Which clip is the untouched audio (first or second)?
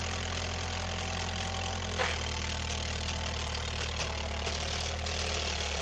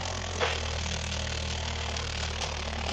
first